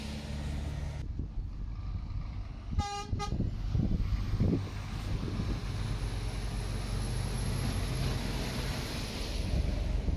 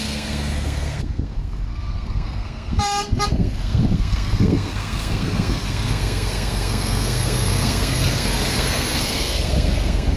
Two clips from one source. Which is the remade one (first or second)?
second